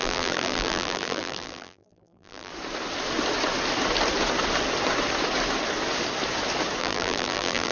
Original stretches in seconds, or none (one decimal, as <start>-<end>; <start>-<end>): 2.5-6.8